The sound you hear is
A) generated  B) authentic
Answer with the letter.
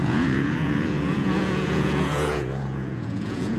A